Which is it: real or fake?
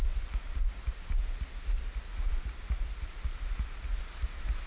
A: real